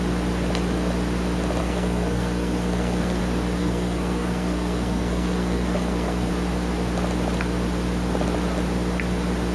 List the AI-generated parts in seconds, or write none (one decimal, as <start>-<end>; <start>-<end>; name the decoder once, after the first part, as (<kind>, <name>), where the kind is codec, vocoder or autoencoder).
1.6-3.2 (codec, SNAC); 3.6-6.3

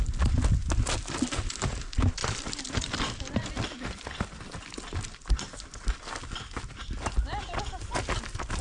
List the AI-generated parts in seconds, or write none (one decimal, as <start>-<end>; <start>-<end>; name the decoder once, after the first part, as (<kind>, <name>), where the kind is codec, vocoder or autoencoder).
2.2-6.0 (vocoder, BigVGAN v2)

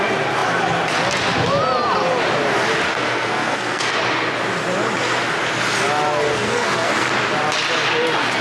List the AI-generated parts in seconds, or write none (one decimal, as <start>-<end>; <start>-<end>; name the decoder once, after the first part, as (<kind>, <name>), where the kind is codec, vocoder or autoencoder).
2.9-4.0 (codec, SNAC); 6.3-7.1